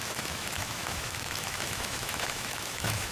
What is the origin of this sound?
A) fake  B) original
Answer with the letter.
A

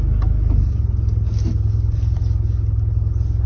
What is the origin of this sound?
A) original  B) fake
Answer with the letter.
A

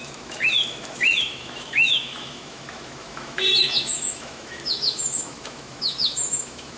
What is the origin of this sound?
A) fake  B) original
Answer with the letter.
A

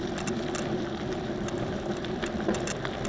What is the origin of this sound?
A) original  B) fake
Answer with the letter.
A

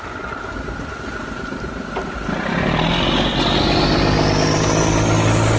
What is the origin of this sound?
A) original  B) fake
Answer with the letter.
A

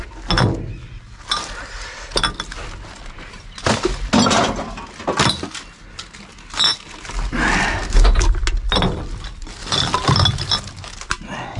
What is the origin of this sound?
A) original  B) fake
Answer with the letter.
A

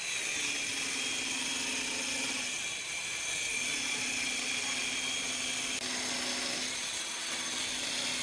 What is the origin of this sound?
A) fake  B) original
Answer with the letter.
B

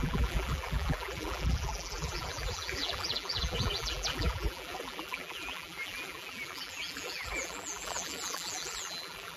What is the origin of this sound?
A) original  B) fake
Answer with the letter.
B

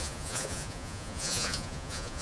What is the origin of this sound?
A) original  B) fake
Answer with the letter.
B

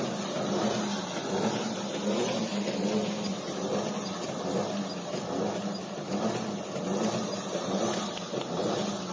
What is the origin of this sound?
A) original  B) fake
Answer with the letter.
A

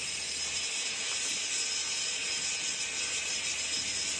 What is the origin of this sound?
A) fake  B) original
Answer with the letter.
B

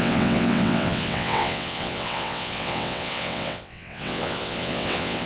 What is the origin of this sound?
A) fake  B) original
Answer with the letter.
A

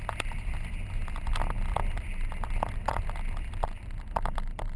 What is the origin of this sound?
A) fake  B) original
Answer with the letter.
B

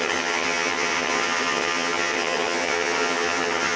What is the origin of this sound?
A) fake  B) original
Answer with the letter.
A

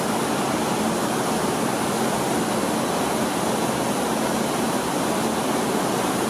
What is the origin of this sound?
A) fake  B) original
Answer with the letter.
B